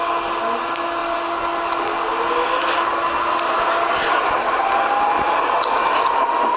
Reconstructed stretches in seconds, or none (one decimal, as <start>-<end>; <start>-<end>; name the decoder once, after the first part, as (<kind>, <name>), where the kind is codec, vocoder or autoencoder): none